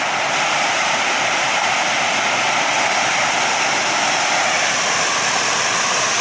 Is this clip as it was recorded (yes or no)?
no